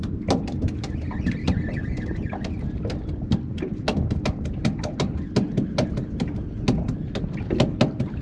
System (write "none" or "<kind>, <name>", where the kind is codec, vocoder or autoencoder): none